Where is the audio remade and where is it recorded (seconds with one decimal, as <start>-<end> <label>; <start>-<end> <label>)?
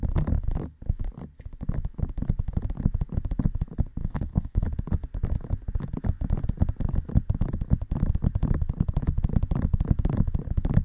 0.0-4.0 recorded; 4.0-4.6 remade; 4.6-10.8 recorded